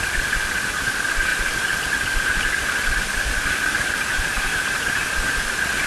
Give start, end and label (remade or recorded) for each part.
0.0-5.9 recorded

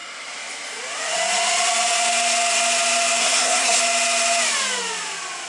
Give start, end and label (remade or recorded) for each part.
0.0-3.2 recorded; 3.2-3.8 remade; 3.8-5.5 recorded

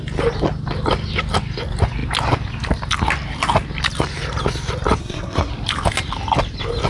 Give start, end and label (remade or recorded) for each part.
0.0-5.0 recorded; 5.0-5.5 remade; 5.5-6.9 recorded